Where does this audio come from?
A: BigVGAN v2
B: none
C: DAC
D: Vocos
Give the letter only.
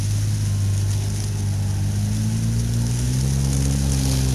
B